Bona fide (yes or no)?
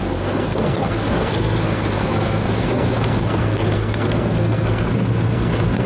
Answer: no